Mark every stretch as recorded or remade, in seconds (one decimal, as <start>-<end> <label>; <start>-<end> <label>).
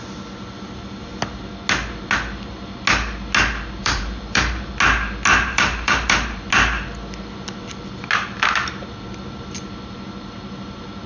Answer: 0.0-3.8 recorded; 3.8-4.7 remade; 4.7-5.3 recorded; 5.3-6.5 remade; 6.5-11.1 recorded